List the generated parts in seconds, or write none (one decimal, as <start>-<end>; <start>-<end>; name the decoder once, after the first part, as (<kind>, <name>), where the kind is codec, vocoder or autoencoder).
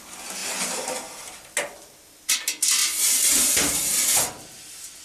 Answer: none